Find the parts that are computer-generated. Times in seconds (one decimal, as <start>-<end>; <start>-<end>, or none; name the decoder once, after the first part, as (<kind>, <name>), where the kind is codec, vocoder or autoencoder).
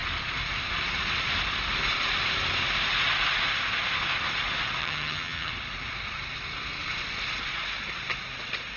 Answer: 4.8-5.5 (vocoder, HiFi-GAN)